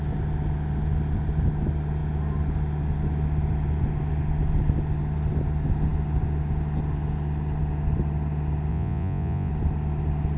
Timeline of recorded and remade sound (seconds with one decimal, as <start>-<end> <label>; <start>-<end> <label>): 0.0-8.7 recorded; 8.7-9.5 remade; 9.5-10.4 recorded